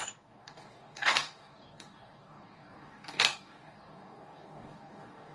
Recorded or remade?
remade